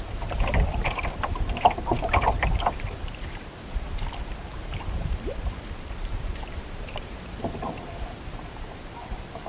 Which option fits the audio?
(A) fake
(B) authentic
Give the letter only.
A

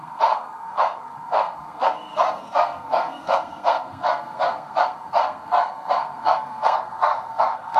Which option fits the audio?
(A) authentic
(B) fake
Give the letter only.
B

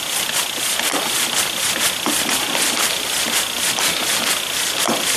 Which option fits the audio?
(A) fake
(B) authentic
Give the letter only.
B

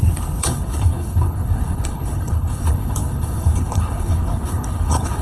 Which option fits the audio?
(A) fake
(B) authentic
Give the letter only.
A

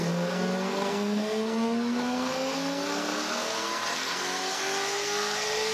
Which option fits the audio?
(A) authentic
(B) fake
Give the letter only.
B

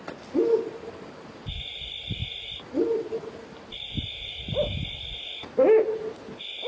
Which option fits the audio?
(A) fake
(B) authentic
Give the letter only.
B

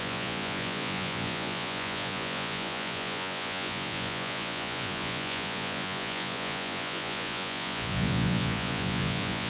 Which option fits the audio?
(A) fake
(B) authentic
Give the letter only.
A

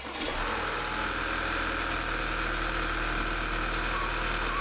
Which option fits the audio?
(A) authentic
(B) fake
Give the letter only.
A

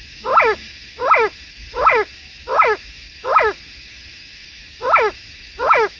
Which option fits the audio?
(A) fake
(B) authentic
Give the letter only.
A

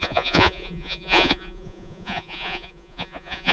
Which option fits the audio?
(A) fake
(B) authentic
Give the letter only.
A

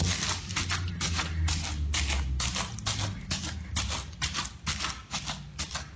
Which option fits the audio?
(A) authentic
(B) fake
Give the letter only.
A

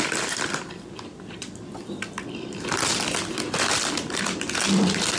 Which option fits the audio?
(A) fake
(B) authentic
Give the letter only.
A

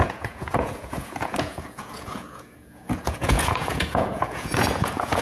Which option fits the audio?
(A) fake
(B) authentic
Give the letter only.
A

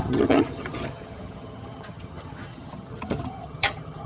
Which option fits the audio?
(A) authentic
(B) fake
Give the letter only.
B